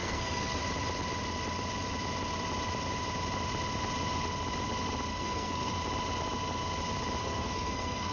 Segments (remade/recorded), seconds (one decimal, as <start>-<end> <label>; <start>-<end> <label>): 0.0-0.6 remade; 0.6-5.1 recorded; 5.1-5.7 remade; 5.7-7.2 recorded; 7.2-8.1 remade